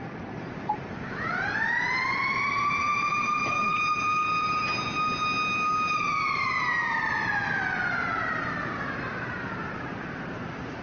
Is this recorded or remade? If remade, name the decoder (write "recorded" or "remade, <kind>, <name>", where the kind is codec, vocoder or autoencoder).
remade, vocoder, BigVGAN v2